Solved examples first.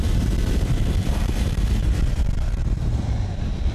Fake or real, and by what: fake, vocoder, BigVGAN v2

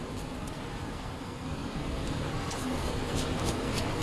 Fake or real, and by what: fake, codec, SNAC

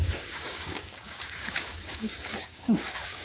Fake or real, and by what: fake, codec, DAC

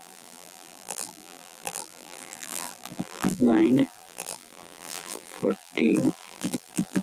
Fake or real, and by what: fake, vocoder, BigVGAN v2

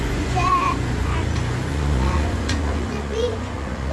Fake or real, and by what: fake, vocoder, Vocos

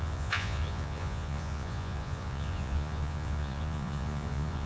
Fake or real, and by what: fake, vocoder, Vocos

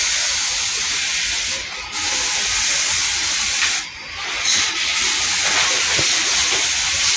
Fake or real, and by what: real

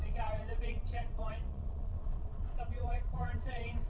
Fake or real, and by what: fake, vocoder, Vocos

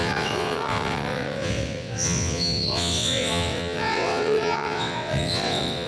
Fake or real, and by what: fake, vocoder, WaveNeXt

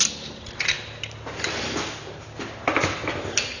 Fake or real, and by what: real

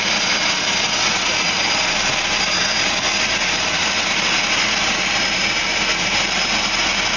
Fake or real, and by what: real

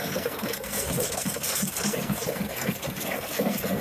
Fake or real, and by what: fake, codec, SNAC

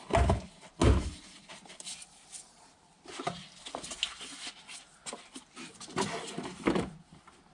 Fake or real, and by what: real